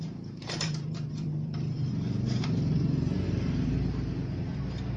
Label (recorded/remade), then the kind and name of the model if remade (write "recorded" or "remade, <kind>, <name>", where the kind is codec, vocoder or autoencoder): remade, vocoder, BigVGAN v2